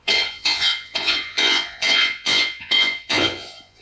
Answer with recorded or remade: remade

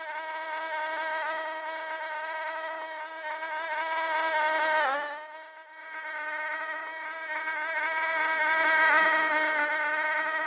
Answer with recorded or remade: recorded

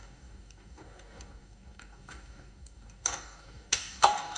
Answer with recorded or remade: remade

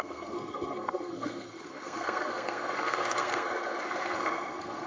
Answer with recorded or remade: remade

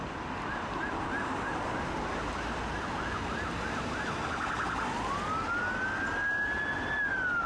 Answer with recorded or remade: recorded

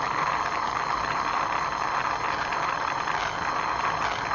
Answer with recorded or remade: recorded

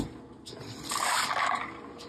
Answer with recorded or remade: recorded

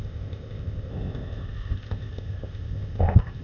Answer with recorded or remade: remade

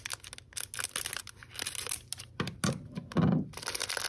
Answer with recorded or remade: recorded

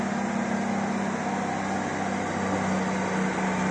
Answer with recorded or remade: recorded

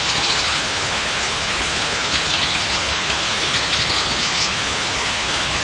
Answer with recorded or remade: remade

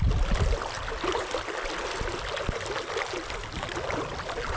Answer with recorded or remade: recorded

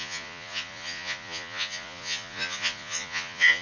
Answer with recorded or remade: remade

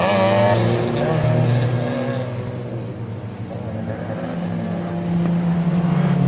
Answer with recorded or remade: recorded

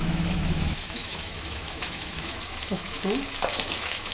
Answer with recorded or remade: remade